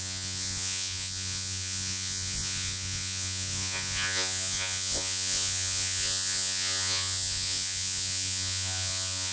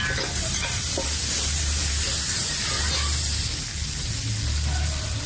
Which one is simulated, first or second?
first